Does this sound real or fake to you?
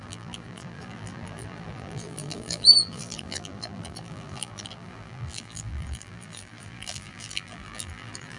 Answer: fake